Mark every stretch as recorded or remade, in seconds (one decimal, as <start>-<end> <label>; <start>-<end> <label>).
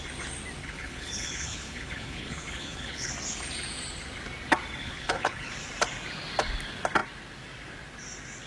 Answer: 0.0-0.6 recorded; 0.6-3.1 remade; 3.1-4.8 recorded; 4.8-5.5 remade; 5.5-8.5 recorded